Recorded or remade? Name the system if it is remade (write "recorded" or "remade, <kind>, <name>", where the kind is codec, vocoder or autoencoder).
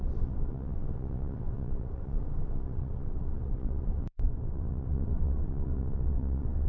remade, vocoder, WaveNeXt